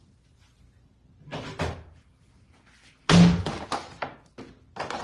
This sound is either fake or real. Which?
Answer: real